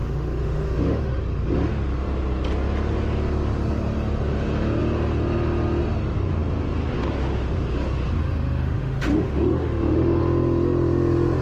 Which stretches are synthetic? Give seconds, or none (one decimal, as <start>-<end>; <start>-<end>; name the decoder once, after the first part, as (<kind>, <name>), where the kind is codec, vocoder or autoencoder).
0.0-1.2 (autoencoder, DAC-VAE); 8.2-10.2